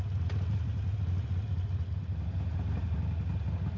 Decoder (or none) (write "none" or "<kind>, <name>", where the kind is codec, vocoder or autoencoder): none